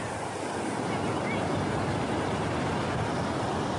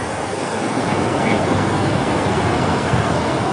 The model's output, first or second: second